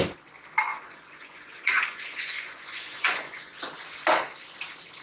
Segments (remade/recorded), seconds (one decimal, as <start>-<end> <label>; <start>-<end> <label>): 0.0-0.7 recorded; 0.7-3.7 remade; 3.7-5.0 recorded